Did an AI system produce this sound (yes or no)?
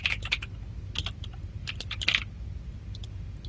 no